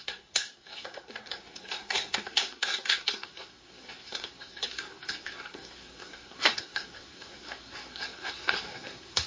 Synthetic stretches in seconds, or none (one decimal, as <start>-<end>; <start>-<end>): 0.0-9.3